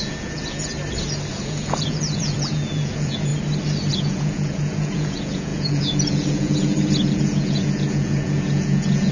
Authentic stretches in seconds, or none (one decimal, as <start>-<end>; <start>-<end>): 0.7-1.3; 3.3-3.9